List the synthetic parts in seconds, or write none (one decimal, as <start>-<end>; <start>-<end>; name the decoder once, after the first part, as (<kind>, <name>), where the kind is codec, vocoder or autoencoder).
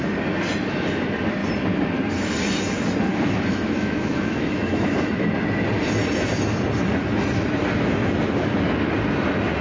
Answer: 3.1-5.3 (autoencoder, DAC-VAE)